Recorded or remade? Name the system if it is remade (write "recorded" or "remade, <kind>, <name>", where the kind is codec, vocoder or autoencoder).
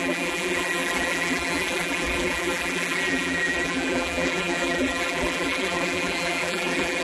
remade, vocoder, BigVGAN v2